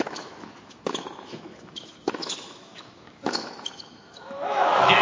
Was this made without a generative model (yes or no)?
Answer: no